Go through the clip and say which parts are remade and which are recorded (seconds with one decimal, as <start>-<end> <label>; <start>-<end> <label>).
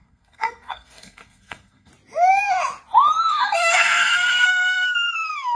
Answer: 0.0-1.9 remade; 1.9-3.2 recorded; 3.2-5.5 remade